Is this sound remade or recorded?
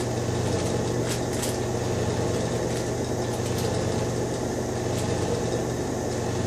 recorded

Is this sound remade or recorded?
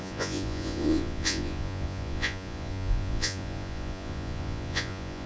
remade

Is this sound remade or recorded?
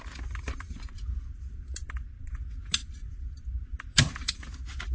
recorded